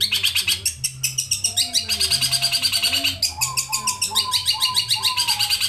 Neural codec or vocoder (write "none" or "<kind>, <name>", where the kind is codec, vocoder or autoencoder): none